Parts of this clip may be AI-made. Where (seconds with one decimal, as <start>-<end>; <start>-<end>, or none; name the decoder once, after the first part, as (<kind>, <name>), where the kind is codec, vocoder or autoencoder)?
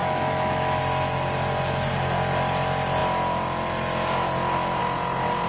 0.0-0.8 (autoencoder, DAC-VAE)